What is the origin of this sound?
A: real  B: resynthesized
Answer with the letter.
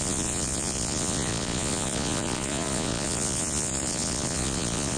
B